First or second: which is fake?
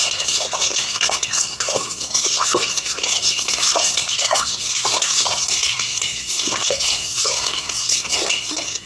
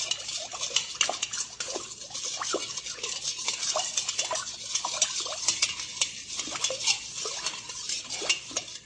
first